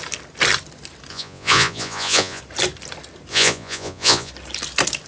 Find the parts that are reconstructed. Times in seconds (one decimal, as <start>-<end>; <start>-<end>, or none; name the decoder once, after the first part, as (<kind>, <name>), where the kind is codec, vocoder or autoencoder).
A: 1.1-2.4 (vocoder, Vocos); 3.3-4.3